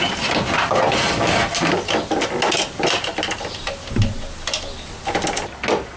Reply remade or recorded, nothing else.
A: recorded